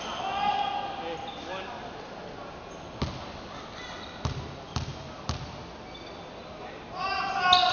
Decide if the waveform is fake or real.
real